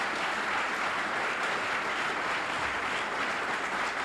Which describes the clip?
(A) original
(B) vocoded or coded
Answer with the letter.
A